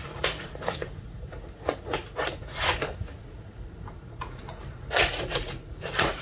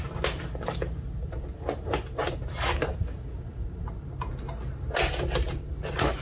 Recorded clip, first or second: second